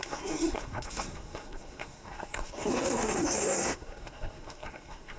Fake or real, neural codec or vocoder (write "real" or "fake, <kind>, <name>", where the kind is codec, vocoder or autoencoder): fake, codec, SNAC